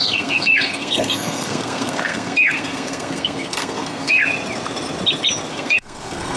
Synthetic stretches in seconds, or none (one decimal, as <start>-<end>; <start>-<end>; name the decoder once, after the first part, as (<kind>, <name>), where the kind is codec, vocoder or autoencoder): 0.0-4.2 (codec, SNAC); 5.5-6.4